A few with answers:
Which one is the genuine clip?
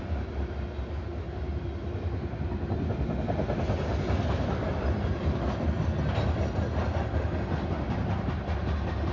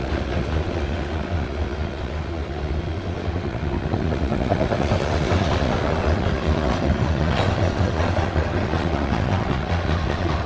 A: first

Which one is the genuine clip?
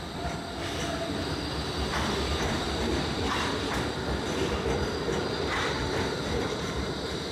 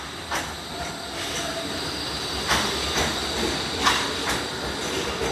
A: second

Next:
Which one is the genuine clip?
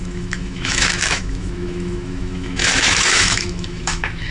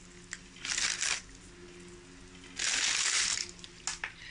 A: second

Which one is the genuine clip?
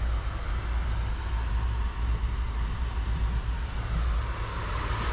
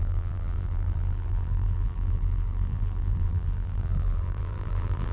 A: first